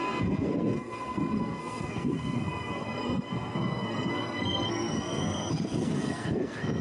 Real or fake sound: fake